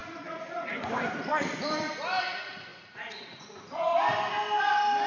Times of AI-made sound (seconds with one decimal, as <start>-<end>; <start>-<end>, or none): 0.0-1.3; 2.2-3.9